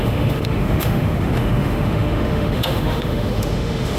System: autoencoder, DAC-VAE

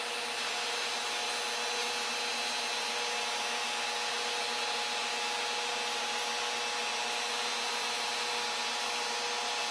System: none